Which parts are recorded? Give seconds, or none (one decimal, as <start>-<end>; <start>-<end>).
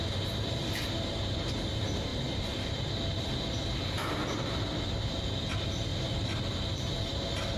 0.0-2.1; 3.3-7.6